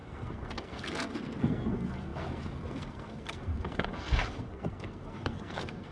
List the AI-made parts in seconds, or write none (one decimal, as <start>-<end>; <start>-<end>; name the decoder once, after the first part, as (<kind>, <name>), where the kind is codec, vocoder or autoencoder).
0.0-5.9 (codec, SNAC)